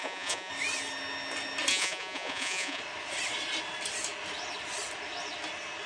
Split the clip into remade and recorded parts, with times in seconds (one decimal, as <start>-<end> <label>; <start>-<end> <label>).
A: 0.0-0.5 remade; 0.5-1.7 recorded; 1.7-2.8 remade; 2.8-5.9 recorded